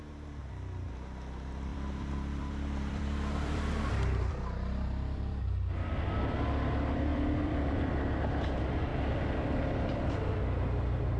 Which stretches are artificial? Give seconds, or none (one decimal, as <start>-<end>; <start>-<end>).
1.7-5.7; 7.1-7.9; 8.9-10.3